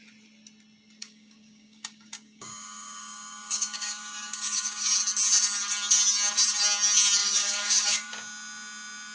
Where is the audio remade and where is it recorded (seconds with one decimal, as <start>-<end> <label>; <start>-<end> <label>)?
0.0-1.0 recorded; 1.0-4.9 remade; 4.9-7.2 recorded; 7.2-8.1 remade; 8.1-9.1 recorded